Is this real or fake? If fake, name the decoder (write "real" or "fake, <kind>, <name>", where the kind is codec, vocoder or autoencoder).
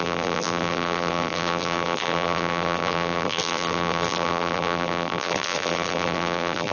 fake, vocoder, BigVGAN v2